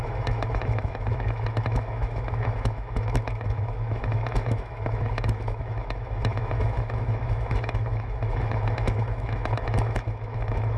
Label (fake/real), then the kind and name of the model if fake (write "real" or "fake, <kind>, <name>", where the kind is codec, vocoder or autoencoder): fake, autoencoder, DAC-VAE